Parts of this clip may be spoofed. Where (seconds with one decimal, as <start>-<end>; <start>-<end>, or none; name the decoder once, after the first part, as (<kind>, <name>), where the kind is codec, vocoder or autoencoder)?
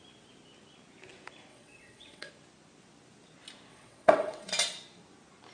1.5-2.3 (vocoder, WaveNeXt); 3.7-4.5